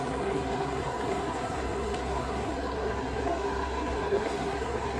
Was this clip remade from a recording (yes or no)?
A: yes